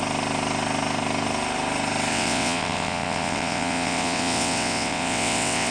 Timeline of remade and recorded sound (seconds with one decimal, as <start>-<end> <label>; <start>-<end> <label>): 0.0-2.1 recorded; 2.1-5.7 remade